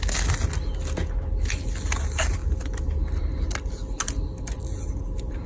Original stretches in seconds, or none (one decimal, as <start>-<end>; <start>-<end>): 0.0-5.5